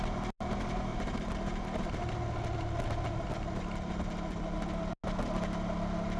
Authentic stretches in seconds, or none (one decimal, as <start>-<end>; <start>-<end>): 0.0-0.9; 4.1-6.2